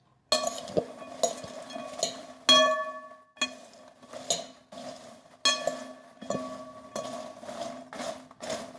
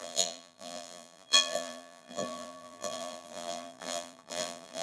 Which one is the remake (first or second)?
second